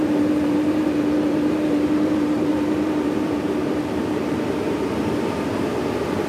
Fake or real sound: fake